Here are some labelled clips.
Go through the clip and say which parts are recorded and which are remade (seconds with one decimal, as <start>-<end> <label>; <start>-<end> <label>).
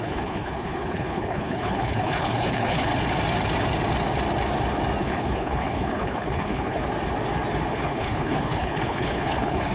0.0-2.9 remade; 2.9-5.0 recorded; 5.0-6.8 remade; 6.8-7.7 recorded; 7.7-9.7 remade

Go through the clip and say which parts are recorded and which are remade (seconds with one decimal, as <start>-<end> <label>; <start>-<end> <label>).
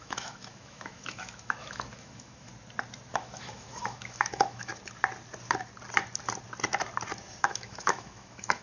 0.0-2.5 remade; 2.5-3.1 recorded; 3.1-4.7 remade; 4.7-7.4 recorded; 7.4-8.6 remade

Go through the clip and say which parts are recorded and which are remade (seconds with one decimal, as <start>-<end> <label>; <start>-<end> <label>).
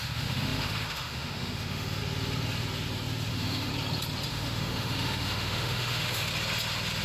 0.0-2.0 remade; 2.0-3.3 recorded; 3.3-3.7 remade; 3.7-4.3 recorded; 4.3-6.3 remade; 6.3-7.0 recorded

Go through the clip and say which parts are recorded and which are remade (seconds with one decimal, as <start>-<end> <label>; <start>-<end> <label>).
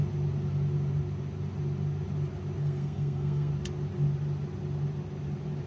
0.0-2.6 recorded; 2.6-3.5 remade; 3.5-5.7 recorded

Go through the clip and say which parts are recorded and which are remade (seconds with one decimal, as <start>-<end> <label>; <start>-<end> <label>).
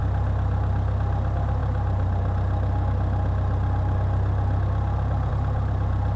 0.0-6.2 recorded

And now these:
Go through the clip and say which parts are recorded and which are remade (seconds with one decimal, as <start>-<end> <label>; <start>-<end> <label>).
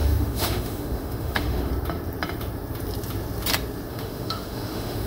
0.0-1.7 remade; 1.7-3.9 recorded; 3.9-5.1 remade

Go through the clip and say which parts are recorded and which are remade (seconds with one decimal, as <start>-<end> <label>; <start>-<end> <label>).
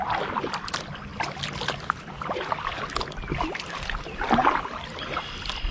0.0-5.7 recorded